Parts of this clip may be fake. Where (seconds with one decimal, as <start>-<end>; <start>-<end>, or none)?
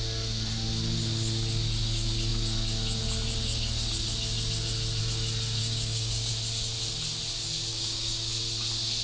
5.6-6.3; 7.7-8.3